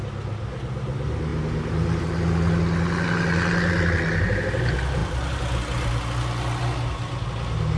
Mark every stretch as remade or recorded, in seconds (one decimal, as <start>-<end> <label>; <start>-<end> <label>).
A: 0.0-7.8 recorded